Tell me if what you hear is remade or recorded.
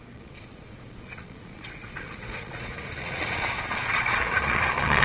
remade